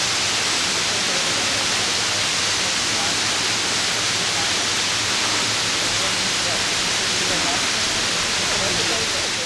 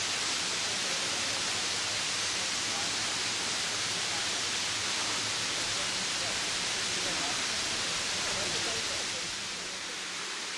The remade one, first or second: second